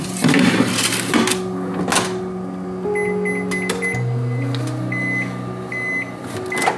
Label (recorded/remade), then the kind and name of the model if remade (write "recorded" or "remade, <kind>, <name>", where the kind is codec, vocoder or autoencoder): recorded